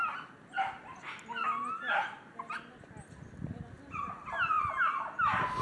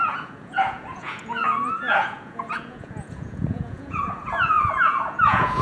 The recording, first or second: first